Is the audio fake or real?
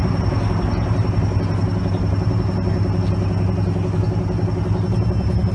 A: real